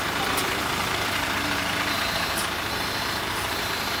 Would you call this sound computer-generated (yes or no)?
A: yes